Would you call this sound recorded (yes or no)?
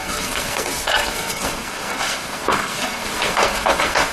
no